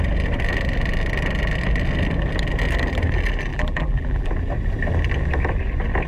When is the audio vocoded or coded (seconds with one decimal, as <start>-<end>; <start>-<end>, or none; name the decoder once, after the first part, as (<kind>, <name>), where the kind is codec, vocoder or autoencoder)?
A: 3.5-4.3 (vocoder, BigVGAN v2)